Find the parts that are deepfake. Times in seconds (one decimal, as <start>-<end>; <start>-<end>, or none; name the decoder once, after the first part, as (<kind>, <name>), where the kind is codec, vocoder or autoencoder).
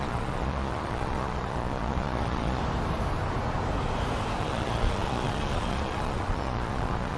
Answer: 0.0-2.6 (vocoder, Vocos); 4.4-7.2